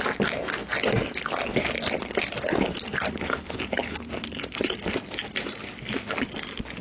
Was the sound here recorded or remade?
recorded